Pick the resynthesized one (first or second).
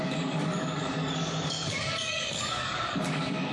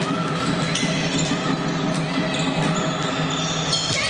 first